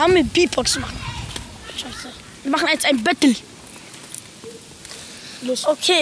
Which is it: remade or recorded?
recorded